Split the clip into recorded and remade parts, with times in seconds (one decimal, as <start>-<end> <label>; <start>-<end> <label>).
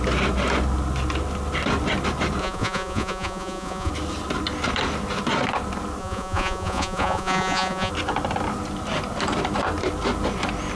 0.0-2.4 recorded; 2.4-3.9 remade; 3.9-6.0 recorded; 6.0-7.9 remade; 7.9-10.8 recorded